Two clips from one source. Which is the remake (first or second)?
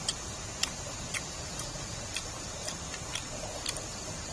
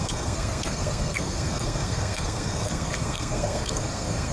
second